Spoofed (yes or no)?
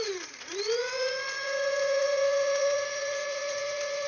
yes